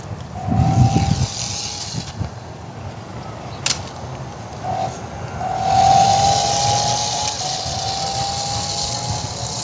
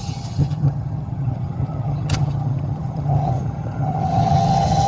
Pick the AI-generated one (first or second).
second